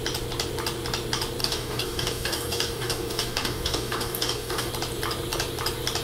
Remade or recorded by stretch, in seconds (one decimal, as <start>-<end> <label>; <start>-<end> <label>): 0.0-1.4 recorded; 1.4-4.7 remade; 4.7-6.0 recorded